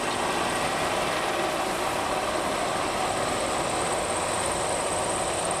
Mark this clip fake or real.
real